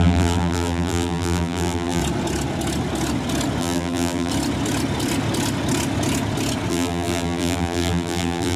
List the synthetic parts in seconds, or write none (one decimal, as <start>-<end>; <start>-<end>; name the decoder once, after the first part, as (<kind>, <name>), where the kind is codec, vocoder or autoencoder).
0.0-2.0 (vocoder, BigVGAN v2); 3.6-4.3; 6.7-8.6